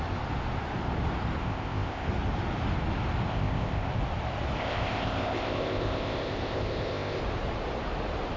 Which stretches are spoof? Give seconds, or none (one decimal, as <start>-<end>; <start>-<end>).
1.4-2.1; 3.3-3.9; 4.6-7.2